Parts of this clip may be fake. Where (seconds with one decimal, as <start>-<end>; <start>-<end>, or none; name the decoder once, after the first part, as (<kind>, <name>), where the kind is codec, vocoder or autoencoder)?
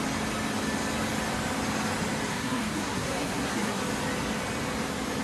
2.3-3.8 (codec, SNAC)